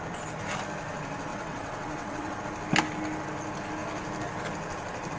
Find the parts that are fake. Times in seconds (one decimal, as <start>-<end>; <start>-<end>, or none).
1.3-2.4